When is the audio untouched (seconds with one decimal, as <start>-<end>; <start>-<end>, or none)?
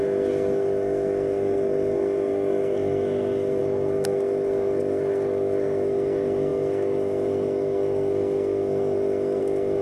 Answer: none